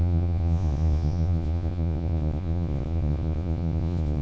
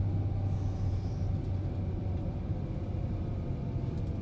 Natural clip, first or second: second